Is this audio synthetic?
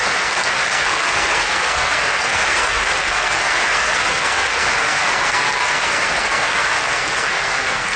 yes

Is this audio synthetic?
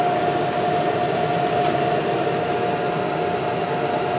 no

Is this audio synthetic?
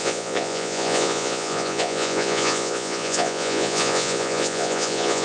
yes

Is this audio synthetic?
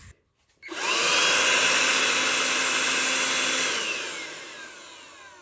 no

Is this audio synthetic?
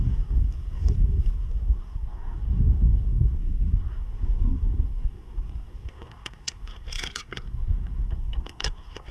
yes